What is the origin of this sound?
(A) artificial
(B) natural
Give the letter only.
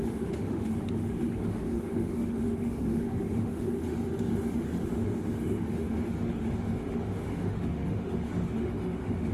A